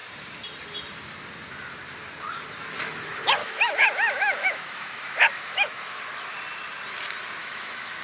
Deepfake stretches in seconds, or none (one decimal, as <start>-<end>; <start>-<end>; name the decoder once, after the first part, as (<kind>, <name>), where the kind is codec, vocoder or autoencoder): 3.4-6.0 (autoencoder, DAC-VAE); 7.4-8.0